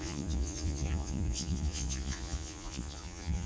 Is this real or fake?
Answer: fake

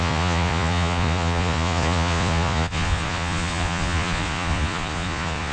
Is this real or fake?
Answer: fake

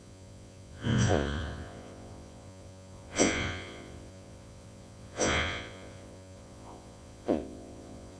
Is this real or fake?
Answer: fake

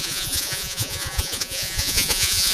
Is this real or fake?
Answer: fake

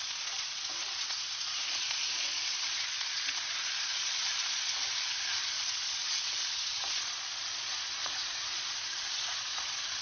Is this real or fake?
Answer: fake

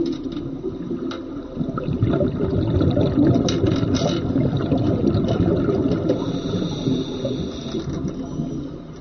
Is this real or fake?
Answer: real